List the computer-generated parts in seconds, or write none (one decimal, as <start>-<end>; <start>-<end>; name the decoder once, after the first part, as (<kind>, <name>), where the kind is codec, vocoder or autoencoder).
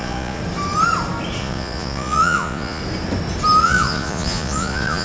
0.0-0.4 (vocoder, Vocos); 1.4-2.8; 3.6-5.0